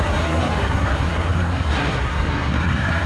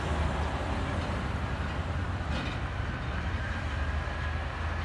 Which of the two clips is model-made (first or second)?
first